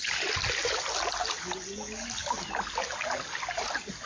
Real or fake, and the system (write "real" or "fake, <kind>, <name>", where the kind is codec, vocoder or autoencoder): real